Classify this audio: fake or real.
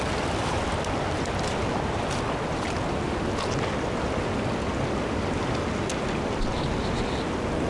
real